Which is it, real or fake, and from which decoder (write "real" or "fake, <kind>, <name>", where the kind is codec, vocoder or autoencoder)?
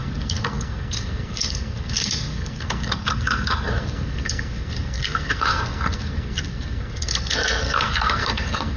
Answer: fake, codec, SNAC